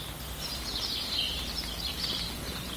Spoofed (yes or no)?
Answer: no